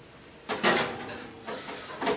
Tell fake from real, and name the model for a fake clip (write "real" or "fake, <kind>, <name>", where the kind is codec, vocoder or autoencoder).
real